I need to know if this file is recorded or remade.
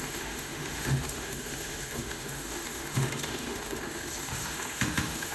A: remade